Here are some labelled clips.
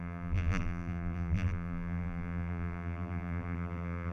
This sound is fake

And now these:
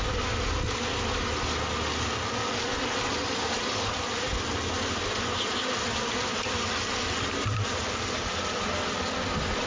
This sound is real